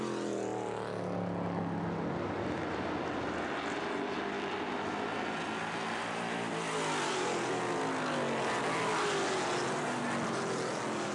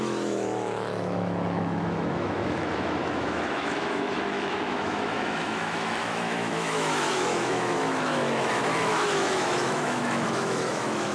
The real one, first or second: first